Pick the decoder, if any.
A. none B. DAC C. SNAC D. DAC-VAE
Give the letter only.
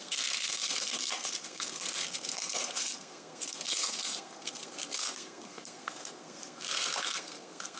C